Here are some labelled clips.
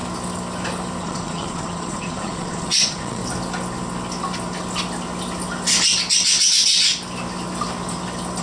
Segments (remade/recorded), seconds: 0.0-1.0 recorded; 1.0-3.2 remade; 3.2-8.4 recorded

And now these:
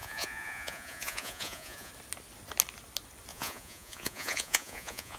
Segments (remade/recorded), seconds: 0.0-1.9 remade; 1.9-3.3 recorded; 3.3-5.2 remade

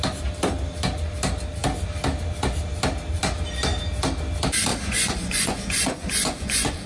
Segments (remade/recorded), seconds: 0.0-4.7 recorded; 4.7-6.9 remade

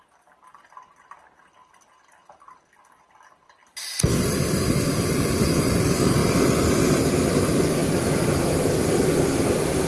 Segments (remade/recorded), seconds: 0.0-9.9 recorded

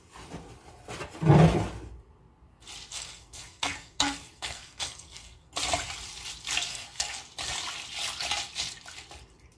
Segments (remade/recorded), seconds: 0.0-2.9 recorded; 2.9-5.5 remade; 5.5-6.7 recorded; 6.7-7.2 remade; 7.2-9.6 recorded